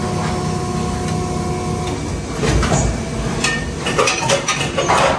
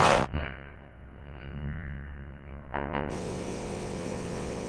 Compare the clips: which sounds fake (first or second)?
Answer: second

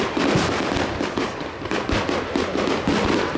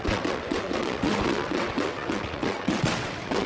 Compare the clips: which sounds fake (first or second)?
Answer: second